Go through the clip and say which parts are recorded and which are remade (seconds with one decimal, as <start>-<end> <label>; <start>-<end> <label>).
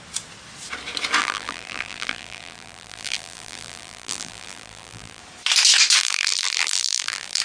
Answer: 0.0-1.2 recorded; 1.2-5.2 remade; 5.2-6.0 recorded; 6.0-7.4 remade